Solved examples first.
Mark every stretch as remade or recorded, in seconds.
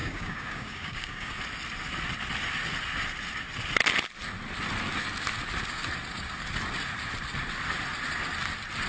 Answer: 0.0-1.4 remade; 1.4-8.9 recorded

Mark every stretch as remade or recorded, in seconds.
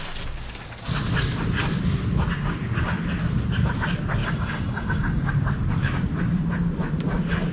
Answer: 0.0-4.2 recorded; 4.2-5.3 remade; 5.3-7.5 recorded